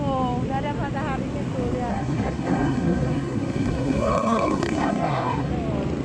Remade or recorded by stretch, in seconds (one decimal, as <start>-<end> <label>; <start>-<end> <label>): 0.0-1.9 recorded; 1.9-5.5 remade; 5.5-6.0 recorded